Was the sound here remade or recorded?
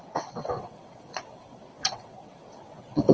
remade